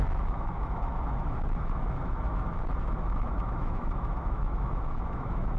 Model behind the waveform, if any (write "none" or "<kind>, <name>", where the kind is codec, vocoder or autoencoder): autoencoder, DAC-VAE